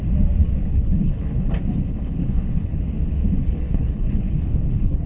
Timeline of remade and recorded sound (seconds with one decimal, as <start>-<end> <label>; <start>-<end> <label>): 0.0-0.6 recorded; 0.6-1.5 remade; 1.5-1.9 recorded; 1.9-2.8 remade; 2.8-3.4 recorded; 3.4-5.1 remade